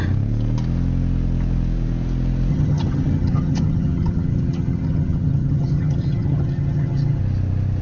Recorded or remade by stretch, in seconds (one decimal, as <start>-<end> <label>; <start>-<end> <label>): 0.0-2.5 recorded; 2.5-7.2 remade; 7.2-7.8 recorded